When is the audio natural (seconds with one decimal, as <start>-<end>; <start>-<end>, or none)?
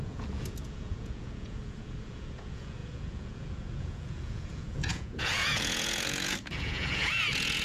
none